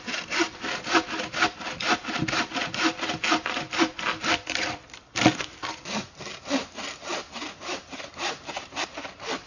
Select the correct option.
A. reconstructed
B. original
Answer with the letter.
A